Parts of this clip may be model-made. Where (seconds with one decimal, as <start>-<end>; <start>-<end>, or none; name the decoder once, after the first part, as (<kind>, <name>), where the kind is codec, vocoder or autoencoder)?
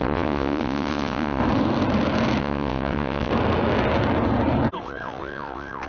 0.0-1.4 (vocoder, WaveNeXt); 2.4-3.3; 4.8-5.9